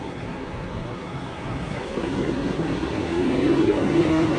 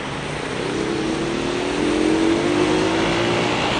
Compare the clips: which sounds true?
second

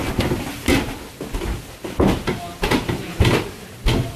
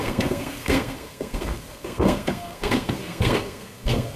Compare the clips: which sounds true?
first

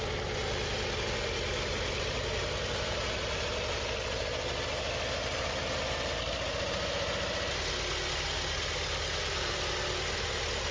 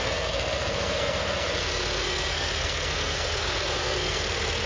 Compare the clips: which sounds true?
first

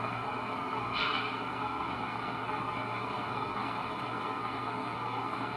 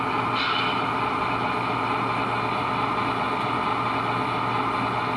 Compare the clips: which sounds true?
second